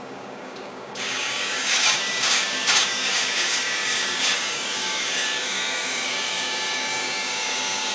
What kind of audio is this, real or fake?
fake